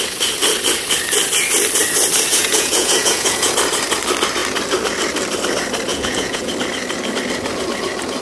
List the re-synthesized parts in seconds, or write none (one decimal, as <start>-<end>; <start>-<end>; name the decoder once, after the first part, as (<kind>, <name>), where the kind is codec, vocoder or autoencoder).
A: 2.3-3.5 (vocoder, Vocos); 5.9-6.5